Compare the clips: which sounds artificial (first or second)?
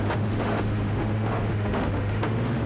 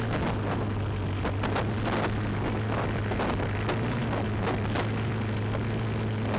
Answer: first